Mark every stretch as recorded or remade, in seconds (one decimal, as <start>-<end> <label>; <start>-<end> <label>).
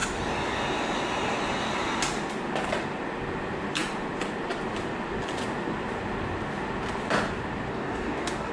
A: 0.0-7.7 recorded; 7.7-8.5 remade